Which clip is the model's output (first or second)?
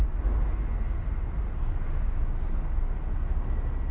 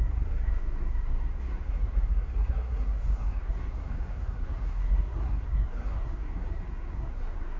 second